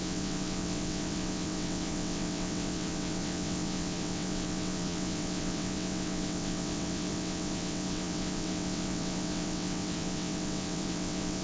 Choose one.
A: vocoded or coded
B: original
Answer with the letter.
A